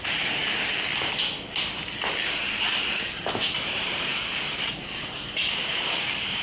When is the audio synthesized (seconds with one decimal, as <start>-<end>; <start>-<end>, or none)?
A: 0.0-0.4; 2.7-6.4